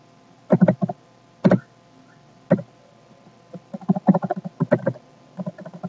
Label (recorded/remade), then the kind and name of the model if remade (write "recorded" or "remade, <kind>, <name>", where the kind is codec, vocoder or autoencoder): recorded